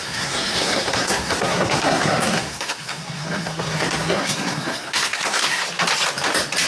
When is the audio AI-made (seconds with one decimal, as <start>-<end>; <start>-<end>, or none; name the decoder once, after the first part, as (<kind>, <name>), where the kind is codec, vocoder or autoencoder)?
0.0-5.6 (codec, SNAC)